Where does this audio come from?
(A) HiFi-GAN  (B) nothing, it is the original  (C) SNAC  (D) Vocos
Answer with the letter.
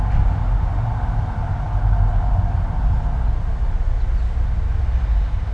B